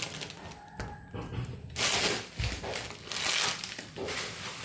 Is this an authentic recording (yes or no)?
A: yes